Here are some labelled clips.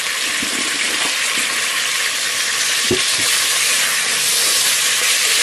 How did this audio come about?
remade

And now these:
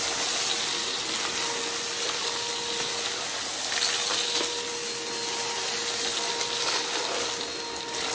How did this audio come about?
recorded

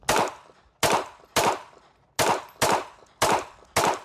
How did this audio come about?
recorded